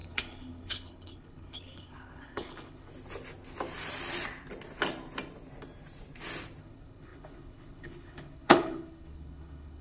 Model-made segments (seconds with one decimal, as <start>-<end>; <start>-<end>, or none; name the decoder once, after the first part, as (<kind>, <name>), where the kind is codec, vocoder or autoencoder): 0.0-2.9 (codec, HILCodec); 6.6-9.8